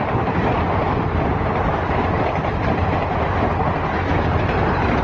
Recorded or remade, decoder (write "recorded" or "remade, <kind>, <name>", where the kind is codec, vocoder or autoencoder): recorded